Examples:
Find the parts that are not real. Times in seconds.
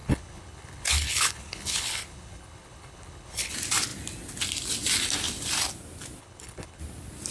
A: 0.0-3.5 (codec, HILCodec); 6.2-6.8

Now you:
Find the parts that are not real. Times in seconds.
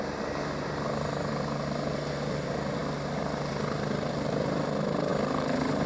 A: none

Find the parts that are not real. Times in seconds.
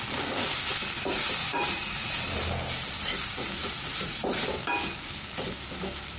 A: 1.4-2.2 (vocoder, Vocos); 3.6-4.2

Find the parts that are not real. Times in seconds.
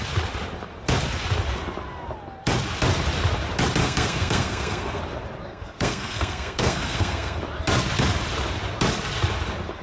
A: 3.8-5.0 (codec, SNAC); 5.5-7.4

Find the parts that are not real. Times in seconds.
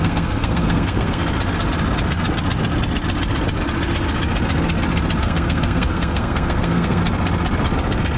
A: 0.0-1.2 (codec, SNAC); 5.2-7.0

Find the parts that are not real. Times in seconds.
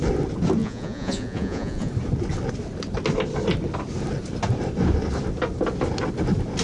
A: 0.6-1.9 (vocoder, Vocos)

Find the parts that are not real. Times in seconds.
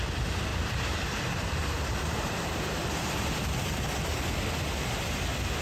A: 0.5-3.8 (vocoder, BigVGAN v2)